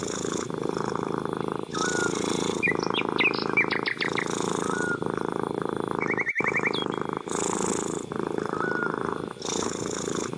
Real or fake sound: real